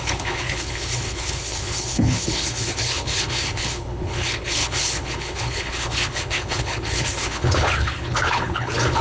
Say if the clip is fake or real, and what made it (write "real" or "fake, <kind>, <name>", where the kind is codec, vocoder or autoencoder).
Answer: fake, codec, HILCodec